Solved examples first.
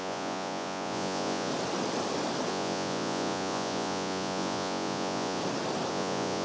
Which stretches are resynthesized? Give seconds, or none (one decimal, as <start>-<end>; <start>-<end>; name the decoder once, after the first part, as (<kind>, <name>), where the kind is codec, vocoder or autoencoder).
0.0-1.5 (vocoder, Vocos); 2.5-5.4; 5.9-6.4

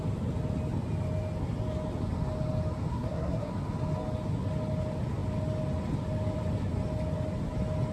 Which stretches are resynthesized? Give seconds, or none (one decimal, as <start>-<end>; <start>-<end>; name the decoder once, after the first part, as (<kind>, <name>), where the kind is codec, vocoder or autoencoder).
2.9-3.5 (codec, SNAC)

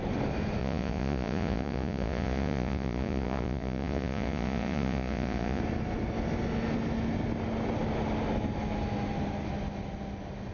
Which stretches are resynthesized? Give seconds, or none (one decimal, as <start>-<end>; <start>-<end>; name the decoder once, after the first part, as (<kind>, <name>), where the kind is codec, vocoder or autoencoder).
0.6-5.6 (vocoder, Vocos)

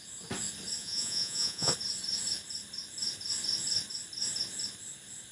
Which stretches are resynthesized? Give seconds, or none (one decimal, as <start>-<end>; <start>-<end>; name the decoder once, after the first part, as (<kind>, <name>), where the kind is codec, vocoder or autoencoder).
0.8-1.7 (vocoder, Vocos)

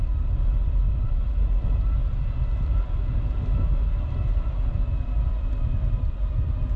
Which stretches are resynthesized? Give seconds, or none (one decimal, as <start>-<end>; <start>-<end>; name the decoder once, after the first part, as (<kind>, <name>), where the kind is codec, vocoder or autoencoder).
none